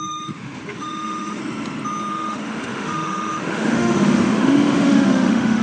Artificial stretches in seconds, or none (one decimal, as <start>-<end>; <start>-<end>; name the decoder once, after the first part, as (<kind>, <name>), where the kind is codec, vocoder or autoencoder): 0.0-1.4 (autoencoder, DAC-VAE); 2.1-5.6